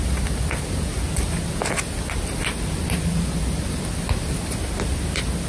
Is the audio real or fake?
real